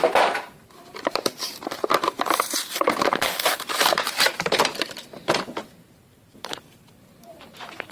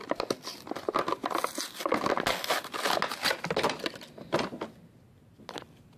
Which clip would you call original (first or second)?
second